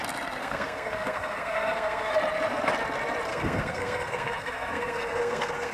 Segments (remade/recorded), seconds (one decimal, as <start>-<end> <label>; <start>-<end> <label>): 0.0-0.4 recorded; 0.4-2.1 remade; 2.1-3.3 recorded; 3.3-5.7 remade

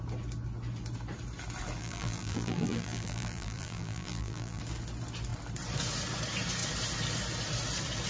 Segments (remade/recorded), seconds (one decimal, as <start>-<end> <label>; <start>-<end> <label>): 0.0-1.8 recorded; 1.8-4.6 remade; 4.6-8.1 recorded

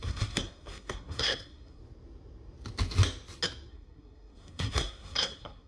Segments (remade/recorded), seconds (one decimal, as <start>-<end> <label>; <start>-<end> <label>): 0.0-1.8 remade; 1.8-3.7 recorded; 3.7-5.7 remade